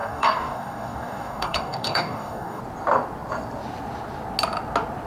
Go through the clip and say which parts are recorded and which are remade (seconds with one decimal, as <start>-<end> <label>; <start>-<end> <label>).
0.0-2.6 remade; 2.6-5.1 recorded